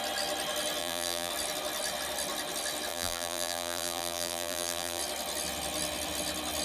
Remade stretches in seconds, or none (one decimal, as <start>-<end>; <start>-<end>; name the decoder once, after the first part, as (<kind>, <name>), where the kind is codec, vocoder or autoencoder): 0.8-1.3 (vocoder, BigVGAN v2); 2.9-5.0